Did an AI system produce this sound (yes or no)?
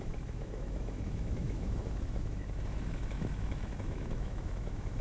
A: yes